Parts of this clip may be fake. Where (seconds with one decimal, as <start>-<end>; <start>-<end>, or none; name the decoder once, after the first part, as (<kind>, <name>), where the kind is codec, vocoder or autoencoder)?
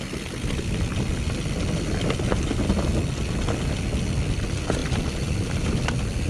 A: none